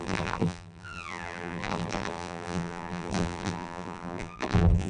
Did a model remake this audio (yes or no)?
yes